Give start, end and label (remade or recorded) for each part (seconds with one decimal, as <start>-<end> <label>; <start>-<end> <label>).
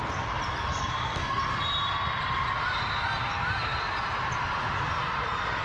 0.0-0.7 recorded; 0.7-1.4 remade; 1.4-5.6 recorded